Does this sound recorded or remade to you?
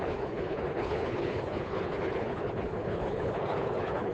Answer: remade